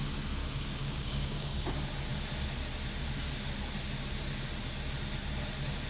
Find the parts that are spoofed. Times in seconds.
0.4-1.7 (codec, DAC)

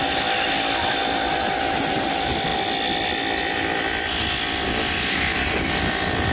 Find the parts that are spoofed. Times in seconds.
none